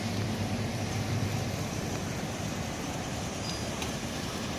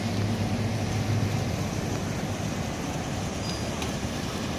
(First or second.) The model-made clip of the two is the first